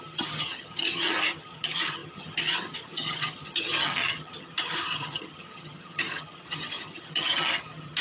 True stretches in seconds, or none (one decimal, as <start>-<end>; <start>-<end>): none